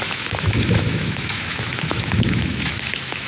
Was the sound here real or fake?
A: fake